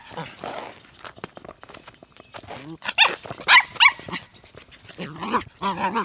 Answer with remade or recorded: recorded